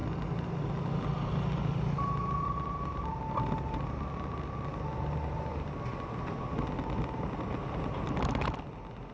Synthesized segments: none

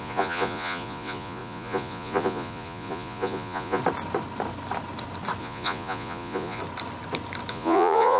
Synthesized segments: 0.0-3.8 (vocoder, Vocos); 5.4-6.6; 7.5-8.2

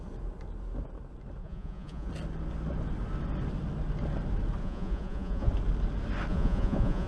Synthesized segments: 1.4-2.1 (vocoder, Vocos); 4.6-5.5; 6.3-7.1